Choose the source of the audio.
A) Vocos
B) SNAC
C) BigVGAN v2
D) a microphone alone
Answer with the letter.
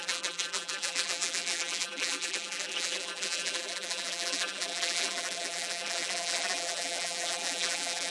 C